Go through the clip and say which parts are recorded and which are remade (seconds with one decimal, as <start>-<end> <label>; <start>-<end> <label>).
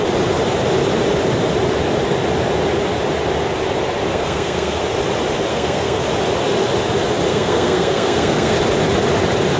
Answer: 0.0-4.1 recorded; 4.1-4.8 remade; 4.8-5.5 recorded; 5.5-6.0 remade; 6.0-7.3 recorded; 7.3-8.6 remade; 8.6-9.6 recorded